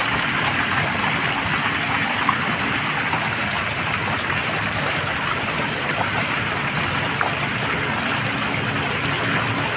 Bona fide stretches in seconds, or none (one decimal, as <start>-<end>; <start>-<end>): 0.0-4.0; 6.4-9.8

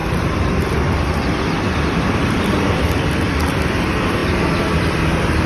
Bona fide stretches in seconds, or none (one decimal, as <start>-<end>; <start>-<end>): 3.3-4.2; 5.1-5.5

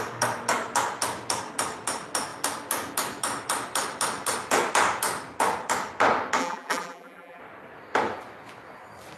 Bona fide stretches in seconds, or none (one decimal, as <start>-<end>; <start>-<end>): 0.0-6.4; 7.4-9.2

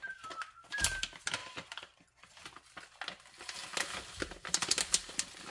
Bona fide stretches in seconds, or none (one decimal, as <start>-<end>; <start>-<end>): 0.0-5.5

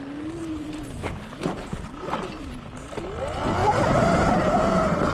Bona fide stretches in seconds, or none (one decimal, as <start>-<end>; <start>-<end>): 0.0-0.4; 1.1-3.6; 4.3-5.1

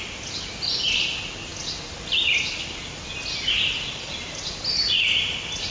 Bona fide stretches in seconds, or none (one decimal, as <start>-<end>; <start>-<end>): 0.0-5.7

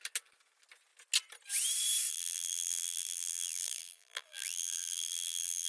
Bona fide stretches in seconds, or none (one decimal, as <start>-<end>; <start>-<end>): 0.0-2.1